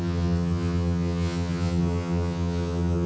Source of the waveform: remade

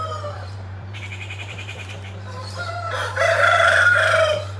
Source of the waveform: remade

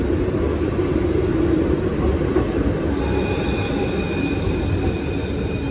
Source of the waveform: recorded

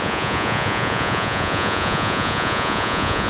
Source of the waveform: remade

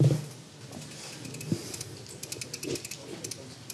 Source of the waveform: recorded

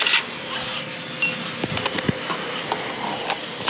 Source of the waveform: recorded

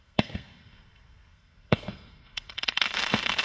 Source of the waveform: remade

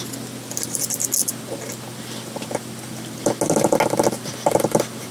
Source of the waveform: recorded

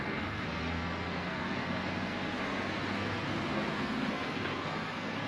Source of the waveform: remade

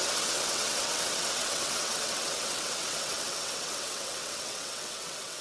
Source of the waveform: remade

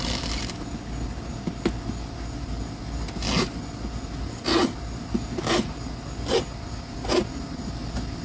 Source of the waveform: recorded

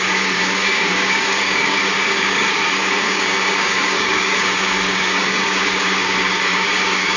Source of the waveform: remade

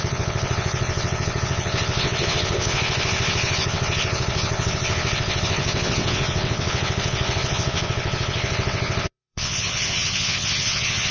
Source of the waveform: remade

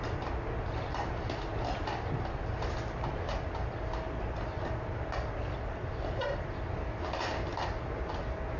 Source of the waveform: recorded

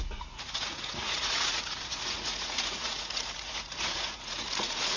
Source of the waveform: remade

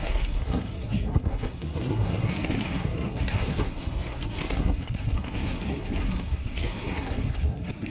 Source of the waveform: remade